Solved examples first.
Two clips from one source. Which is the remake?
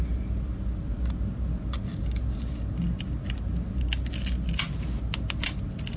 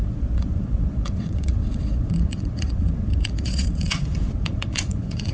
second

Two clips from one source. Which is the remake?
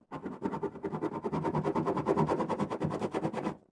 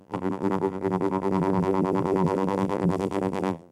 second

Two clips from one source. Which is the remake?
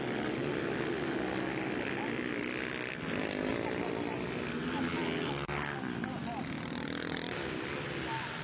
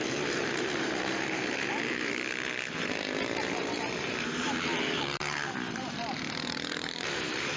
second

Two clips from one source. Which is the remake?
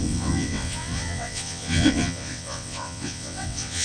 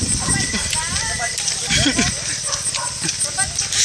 first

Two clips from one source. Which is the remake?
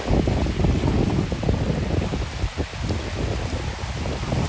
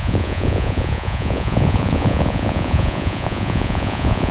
second